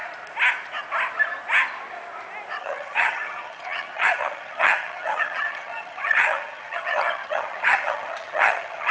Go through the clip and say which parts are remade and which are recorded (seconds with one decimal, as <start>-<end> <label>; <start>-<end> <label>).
0.0-2.6 recorded; 2.6-8.9 remade